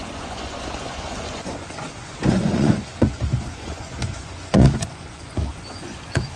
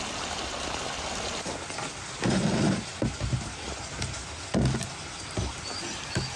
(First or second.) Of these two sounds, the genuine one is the second